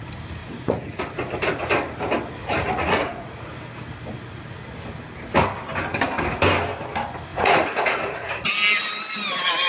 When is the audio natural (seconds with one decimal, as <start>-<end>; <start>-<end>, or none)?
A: 0.0-0.4; 1.0-2.4; 3.5-7.3; 8.5-9.7